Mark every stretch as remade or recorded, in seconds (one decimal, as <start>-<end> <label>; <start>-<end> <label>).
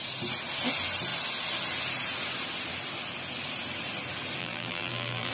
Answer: 0.0-4.4 recorded; 4.4-5.3 remade